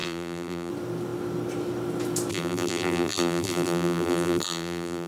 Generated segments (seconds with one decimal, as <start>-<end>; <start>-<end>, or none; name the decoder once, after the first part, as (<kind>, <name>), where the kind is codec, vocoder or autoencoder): 0.0-0.7 (vocoder, BigVGAN v2); 2.3-5.1